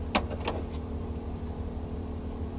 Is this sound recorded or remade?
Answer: recorded